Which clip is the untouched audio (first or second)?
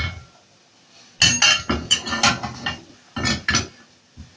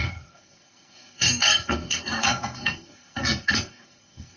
first